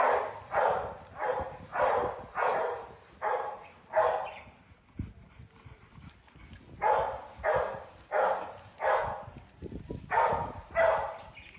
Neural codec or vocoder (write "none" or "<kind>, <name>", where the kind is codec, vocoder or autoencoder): none